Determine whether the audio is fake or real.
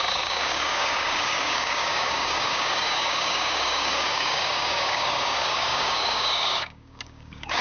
fake